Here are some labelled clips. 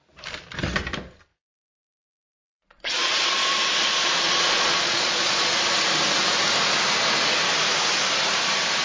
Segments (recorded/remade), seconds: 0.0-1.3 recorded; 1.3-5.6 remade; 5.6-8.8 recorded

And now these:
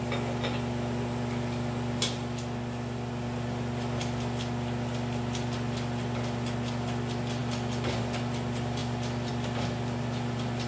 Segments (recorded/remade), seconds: 0.0-10.7 recorded

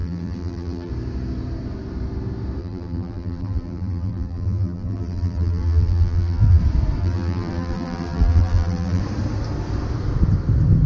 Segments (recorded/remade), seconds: 0.0-0.9 remade; 0.9-2.6 recorded; 2.6-6.6 remade; 6.6-7.0 recorded; 7.0-9.0 remade; 9.0-10.9 recorded

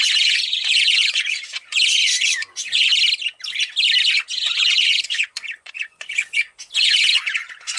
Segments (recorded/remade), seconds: 0.0-2.9 remade; 2.9-4.1 recorded; 4.1-7.8 remade

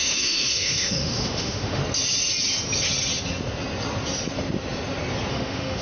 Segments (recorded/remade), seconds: 0.0-1.8 remade; 1.8-5.3 recorded; 5.3-5.8 remade

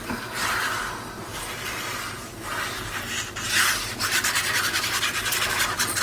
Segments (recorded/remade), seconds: 0.0-1.3 remade; 1.3-3.9 recorded; 3.9-6.0 remade

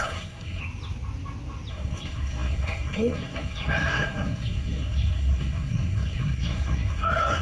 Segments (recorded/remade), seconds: 0.0-0.6 remade; 0.6-1.7 recorded; 1.7-7.4 remade

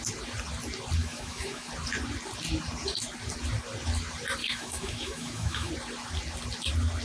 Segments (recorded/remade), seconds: 0.0-1.0 recorded; 1.0-1.7 remade; 1.7-4.4 recorded; 4.4-5.7 remade; 5.7-7.0 recorded